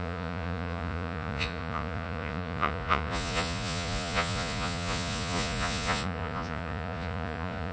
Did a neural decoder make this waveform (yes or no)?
yes